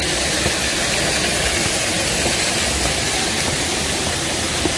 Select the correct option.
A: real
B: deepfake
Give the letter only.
A